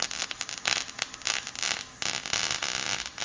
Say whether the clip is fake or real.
real